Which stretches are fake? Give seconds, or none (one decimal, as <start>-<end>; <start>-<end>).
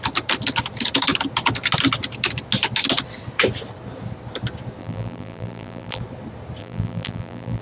4.8-6.0; 6.6-7.6